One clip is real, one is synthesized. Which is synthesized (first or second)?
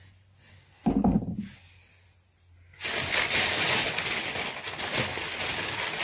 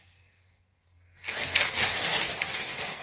second